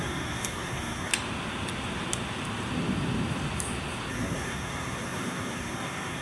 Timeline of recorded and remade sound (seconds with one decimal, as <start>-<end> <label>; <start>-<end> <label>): 0.0-1.1 remade; 1.1-4.1 recorded; 4.1-6.2 remade